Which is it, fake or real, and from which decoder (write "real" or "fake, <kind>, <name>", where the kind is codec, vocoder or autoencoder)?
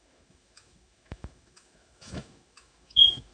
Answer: fake, autoencoder, DAC-VAE